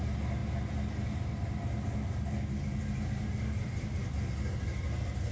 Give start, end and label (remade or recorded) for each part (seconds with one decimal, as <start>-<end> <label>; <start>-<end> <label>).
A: 0.0-5.3 recorded